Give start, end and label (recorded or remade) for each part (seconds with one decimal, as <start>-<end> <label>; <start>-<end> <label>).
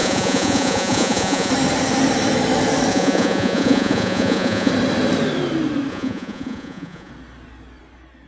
0.0-1.5 remade; 1.5-2.9 recorded; 2.9-4.7 remade; 4.7-5.9 recorded; 5.9-7.1 remade; 7.1-8.3 recorded